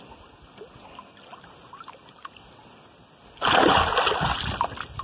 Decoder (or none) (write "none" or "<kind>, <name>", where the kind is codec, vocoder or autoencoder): none